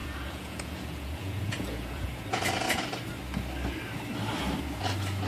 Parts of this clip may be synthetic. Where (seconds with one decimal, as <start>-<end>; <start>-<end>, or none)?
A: 0.0-2.3